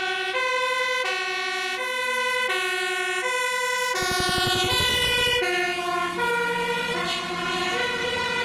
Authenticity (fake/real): real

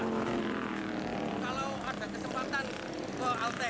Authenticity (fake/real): real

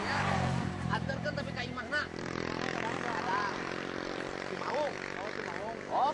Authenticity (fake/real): fake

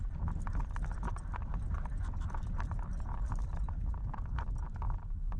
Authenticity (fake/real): fake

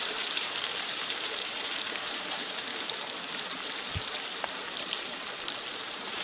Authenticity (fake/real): fake